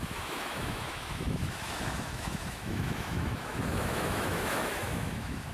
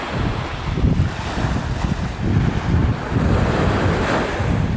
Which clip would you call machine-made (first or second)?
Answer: first